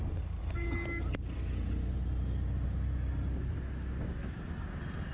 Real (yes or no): yes